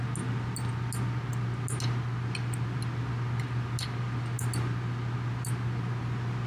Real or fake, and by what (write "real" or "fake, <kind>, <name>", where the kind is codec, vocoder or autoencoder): real